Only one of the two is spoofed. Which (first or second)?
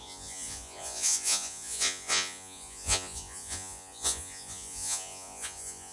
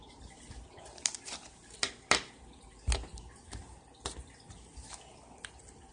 first